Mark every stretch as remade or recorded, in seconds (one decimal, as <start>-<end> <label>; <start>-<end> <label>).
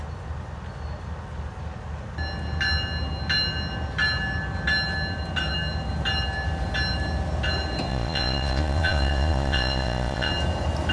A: 0.0-7.9 recorded; 7.9-10.3 remade; 10.3-10.9 recorded